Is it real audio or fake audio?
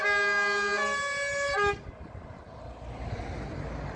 real